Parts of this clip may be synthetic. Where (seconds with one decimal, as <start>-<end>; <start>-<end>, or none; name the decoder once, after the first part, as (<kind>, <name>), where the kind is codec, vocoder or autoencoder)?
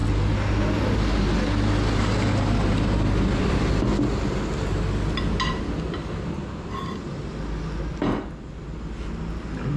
none